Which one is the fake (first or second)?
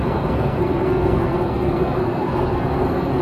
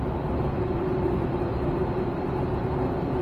first